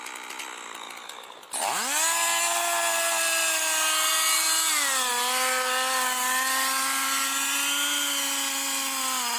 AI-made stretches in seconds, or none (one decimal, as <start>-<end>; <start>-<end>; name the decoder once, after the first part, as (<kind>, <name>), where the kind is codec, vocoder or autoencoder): none